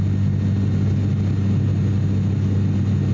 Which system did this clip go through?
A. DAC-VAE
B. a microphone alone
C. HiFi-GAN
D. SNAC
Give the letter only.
B